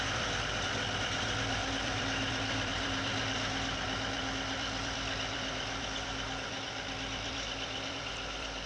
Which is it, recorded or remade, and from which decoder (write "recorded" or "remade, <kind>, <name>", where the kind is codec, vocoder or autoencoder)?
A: remade, vocoder, BigVGAN v2